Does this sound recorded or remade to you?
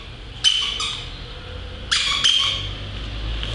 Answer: recorded